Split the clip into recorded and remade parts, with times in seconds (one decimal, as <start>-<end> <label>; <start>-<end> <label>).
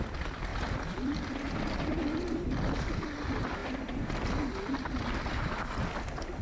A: 0.0-0.5 recorded; 0.5-2.3 remade; 2.3-6.4 recorded